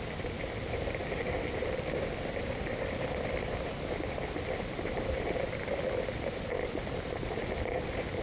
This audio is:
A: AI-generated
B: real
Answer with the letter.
A